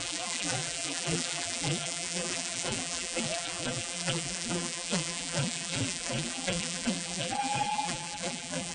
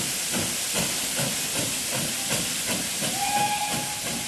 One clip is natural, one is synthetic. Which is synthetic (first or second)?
first